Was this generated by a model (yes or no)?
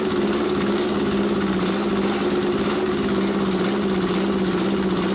no